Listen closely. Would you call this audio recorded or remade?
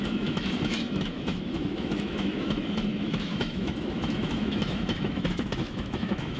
remade